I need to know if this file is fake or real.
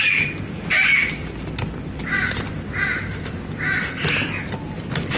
real